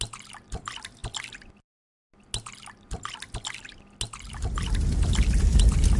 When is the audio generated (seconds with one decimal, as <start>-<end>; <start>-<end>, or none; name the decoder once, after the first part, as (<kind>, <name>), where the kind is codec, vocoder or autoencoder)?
none